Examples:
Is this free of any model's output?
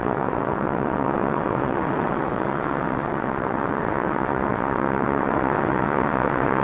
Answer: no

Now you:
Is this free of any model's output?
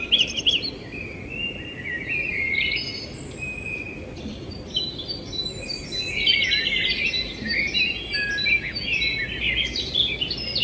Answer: yes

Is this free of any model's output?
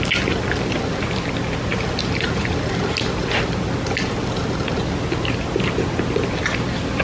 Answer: yes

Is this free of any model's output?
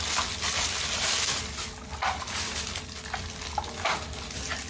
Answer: yes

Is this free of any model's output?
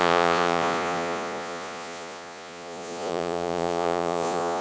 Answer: no